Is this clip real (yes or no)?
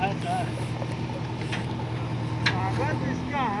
yes